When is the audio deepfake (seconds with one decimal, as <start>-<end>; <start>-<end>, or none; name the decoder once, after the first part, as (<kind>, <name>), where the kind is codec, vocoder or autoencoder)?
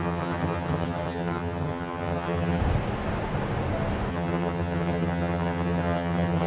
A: 0.0-2.6 (vocoder, HiFi-GAN); 4.1-6.5